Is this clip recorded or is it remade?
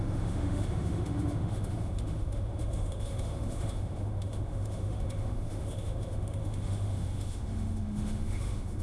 remade